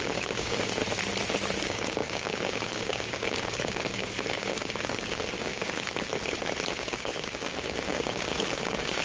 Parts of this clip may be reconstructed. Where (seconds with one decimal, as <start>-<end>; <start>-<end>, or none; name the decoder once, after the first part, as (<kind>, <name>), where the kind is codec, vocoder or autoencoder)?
0.0-0.8 (codec, DAC); 1.6-6.1; 6.7-9.0